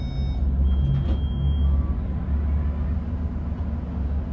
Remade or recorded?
recorded